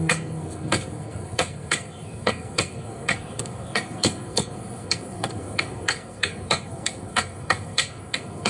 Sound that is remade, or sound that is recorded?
remade